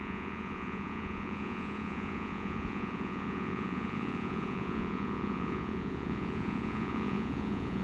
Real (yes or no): no